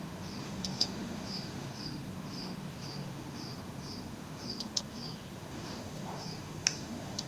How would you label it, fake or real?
fake